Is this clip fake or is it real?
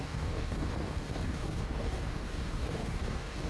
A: fake